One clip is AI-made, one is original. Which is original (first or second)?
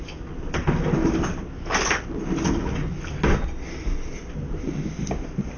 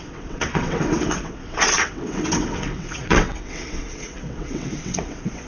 first